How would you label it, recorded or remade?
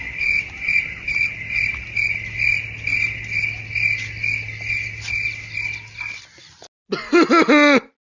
recorded